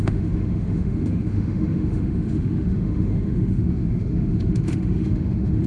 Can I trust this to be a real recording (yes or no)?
no